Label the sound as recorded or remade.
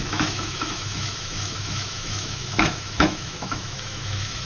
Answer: remade